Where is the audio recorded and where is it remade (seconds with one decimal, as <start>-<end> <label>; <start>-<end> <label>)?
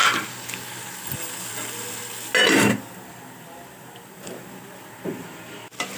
0.0-6.0 recorded